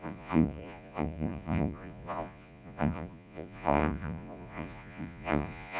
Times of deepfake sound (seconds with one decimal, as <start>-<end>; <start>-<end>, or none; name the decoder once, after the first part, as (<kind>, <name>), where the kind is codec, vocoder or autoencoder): 0.0-5.8 (vocoder, Vocos)